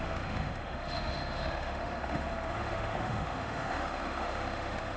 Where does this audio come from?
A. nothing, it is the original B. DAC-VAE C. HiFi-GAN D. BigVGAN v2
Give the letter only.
B